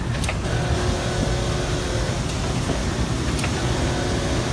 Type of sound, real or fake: real